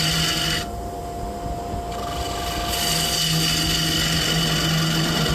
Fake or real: real